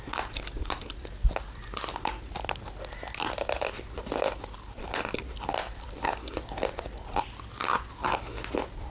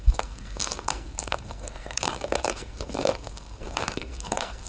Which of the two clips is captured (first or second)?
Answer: first